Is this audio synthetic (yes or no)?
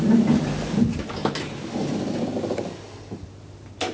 no